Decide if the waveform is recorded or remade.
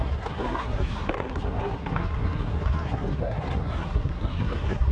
remade